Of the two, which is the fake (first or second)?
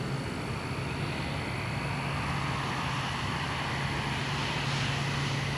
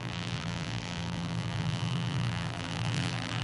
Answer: second